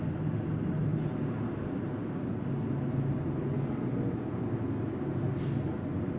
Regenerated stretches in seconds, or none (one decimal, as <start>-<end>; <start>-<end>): none